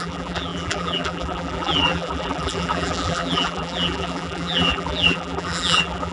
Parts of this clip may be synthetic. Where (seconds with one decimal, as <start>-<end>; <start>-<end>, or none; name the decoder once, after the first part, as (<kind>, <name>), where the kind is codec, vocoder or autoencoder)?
0.0-6.1 (vocoder, BigVGAN v2)